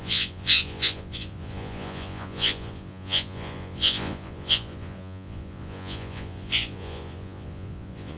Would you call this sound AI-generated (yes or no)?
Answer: yes